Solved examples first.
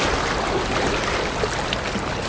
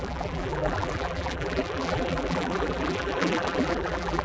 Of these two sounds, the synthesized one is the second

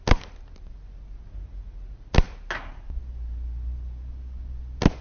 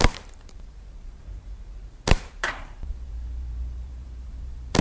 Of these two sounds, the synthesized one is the second